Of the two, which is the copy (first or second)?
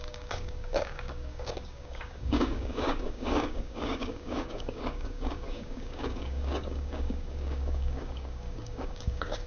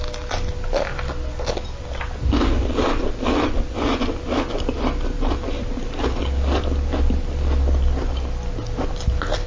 first